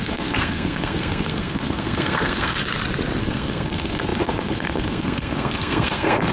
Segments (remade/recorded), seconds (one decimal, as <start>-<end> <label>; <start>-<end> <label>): 0.0-2.6 remade; 2.6-3.2 recorded; 3.2-6.3 remade